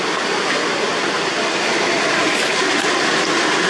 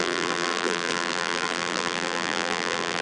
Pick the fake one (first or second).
second